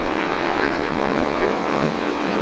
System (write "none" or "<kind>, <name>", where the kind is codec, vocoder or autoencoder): vocoder, WaveNeXt